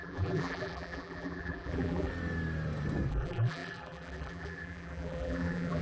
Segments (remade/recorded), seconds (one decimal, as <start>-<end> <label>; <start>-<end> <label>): 0.0-2.1 remade; 2.1-3.1 recorded; 3.1-5.8 remade